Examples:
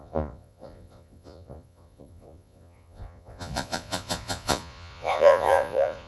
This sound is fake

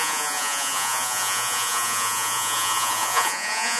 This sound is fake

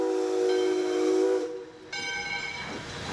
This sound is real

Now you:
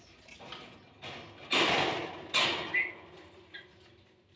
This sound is real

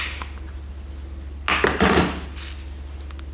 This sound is real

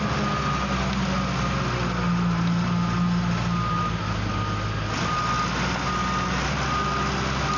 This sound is real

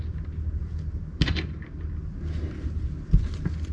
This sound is real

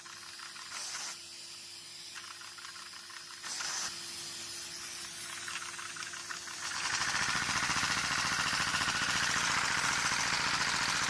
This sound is real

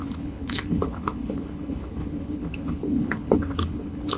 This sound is fake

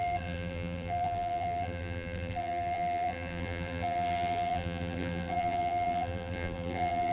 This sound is fake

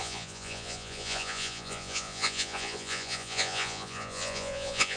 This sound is fake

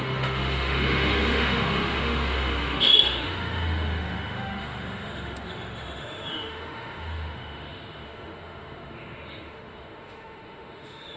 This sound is fake